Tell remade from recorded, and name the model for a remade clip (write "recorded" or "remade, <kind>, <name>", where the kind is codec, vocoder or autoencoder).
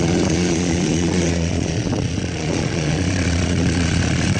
remade, vocoder, Vocos